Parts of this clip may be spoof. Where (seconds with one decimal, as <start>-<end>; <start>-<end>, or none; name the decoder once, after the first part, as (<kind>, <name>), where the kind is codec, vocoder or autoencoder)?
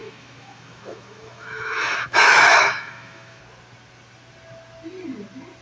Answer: 0.0-3.4 (autoencoder, DAC-VAE)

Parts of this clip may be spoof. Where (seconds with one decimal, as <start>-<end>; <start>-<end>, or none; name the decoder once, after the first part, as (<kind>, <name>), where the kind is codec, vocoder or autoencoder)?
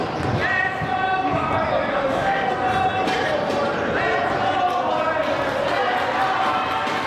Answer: 1.9-2.5 (autoencoder, DAC-VAE)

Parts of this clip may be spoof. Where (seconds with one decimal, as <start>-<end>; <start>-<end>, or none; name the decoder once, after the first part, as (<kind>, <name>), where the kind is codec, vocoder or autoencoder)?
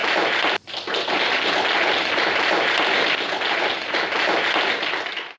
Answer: none